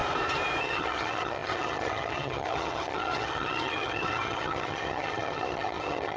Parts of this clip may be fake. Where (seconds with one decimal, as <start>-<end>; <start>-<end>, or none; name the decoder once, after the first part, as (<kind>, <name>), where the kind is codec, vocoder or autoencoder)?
0.6-6.2 (vocoder, HiFi-GAN)